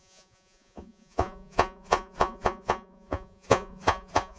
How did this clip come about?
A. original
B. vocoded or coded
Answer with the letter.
B